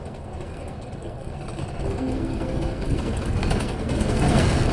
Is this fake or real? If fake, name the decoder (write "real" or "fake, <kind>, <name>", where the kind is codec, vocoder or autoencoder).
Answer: fake, codec, SNAC